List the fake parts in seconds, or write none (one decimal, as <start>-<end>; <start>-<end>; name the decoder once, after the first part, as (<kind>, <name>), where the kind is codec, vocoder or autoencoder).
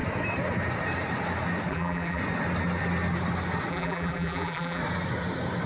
1.7-2.2 (vocoder, BigVGAN v2); 3.7-4.8